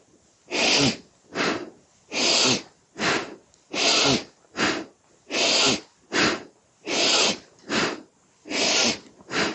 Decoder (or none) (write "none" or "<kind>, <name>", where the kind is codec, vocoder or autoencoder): none